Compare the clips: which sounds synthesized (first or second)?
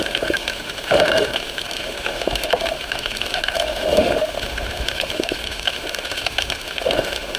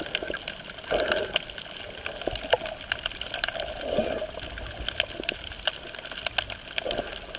first